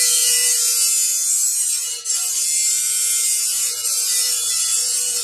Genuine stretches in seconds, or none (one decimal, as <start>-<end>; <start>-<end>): 0.7-2.7